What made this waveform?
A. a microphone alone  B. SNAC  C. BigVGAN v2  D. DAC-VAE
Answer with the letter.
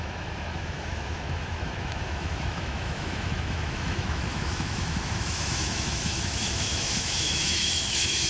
D